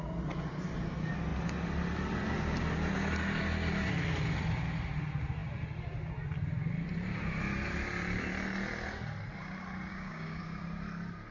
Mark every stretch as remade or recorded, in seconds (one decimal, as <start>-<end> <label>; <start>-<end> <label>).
0.0-9.9 recorded; 9.9-10.4 remade; 10.4-11.3 recorded